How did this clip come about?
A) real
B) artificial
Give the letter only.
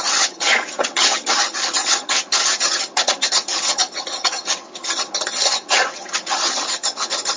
B